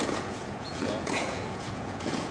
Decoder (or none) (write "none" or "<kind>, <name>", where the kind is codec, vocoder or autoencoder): vocoder, Vocos